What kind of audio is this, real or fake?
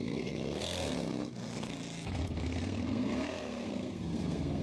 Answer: fake